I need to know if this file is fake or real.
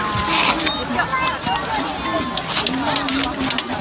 real